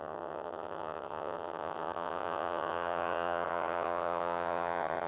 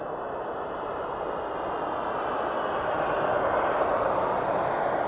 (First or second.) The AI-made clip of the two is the first